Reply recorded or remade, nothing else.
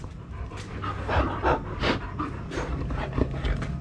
recorded